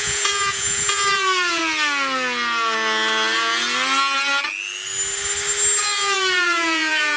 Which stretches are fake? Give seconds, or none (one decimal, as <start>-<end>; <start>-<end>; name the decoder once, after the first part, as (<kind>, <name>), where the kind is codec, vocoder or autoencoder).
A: 0.0-1.6 (vocoder, Vocos); 5.8-7.2